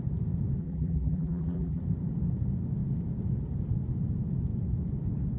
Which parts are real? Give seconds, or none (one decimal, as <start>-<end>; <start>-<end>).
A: 0.0-0.6; 1.8-5.4

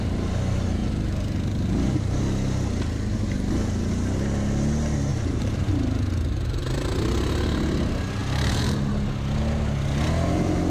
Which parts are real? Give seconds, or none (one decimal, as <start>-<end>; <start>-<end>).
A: 0.0-0.8; 2.2-5.1; 5.7-8.2; 8.9-10.7

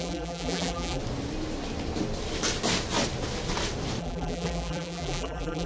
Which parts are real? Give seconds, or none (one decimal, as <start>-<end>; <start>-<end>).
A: 1.0-4.0

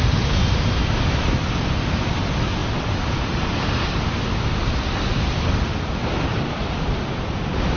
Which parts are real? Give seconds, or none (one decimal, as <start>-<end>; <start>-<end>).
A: 0.0-6.3; 6.8-7.8

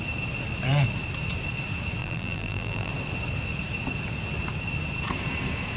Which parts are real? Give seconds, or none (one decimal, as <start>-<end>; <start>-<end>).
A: 0.0-2.0; 2.9-5.8

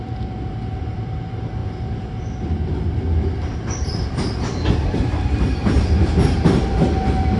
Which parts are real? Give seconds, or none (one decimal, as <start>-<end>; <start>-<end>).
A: none